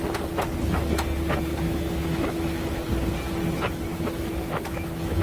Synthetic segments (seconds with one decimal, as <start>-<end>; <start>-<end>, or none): 1.5-2.7; 3.9-5.2